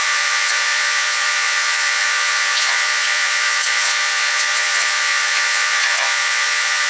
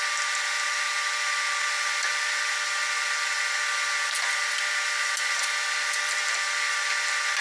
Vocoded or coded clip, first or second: first